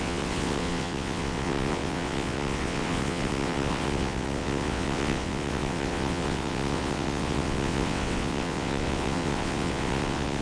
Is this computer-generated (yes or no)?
yes